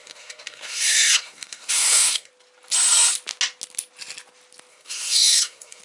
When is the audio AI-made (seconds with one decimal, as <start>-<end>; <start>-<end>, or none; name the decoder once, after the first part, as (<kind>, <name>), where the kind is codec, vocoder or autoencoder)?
0.0-2.3 (codec, SNAC); 4.7-5.8